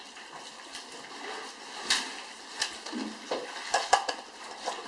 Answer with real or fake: real